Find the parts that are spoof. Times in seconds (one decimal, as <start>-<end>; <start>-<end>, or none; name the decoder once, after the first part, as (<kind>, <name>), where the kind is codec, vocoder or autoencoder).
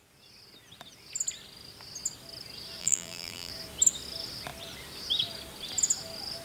2.8-3.5 (vocoder, BigVGAN v2)